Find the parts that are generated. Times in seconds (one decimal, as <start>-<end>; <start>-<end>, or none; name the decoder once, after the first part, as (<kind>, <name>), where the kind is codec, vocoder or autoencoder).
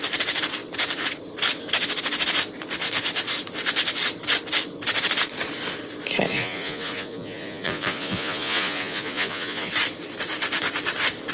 6.3-9.7 (vocoder, Vocos)